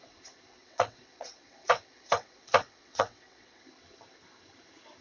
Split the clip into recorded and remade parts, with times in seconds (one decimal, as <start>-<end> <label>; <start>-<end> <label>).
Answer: 0.0-0.6 recorded; 0.6-3.6 remade; 3.6-5.0 recorded